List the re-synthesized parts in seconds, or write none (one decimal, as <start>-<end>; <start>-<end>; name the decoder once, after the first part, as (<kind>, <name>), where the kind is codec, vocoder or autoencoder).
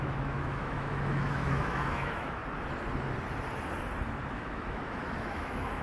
0.0-2.4 (autoencoder, DAC-VAE); 4.3-5.8